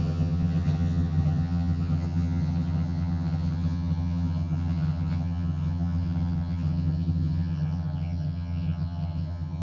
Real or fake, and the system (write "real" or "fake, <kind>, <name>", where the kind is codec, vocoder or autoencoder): fake, vocoder, HiFi-GAN